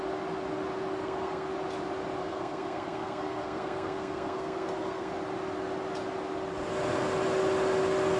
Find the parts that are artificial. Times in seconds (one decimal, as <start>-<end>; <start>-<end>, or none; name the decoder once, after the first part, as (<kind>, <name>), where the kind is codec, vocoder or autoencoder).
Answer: 1.0-1.5 (codec, SNAC); 2.2-5.1